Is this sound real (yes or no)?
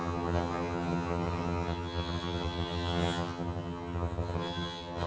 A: no